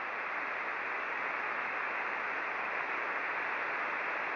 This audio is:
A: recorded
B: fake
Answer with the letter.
A